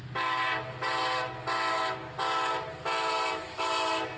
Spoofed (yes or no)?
no